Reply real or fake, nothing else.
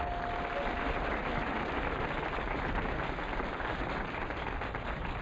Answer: real